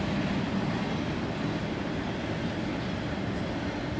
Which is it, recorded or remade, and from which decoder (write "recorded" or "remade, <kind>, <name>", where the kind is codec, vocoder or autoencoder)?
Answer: recorded